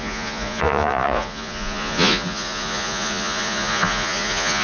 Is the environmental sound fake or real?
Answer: fake